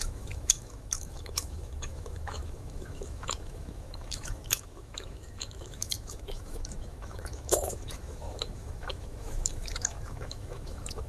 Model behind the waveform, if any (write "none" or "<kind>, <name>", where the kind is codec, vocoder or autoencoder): autoencoder, DAC-VAE